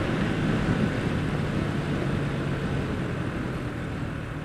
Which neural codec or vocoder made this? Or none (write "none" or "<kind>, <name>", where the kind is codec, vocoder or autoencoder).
none